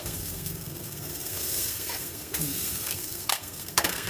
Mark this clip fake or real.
fake